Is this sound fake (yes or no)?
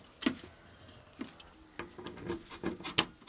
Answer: no